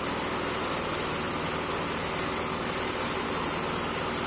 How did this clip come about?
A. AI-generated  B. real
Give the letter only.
B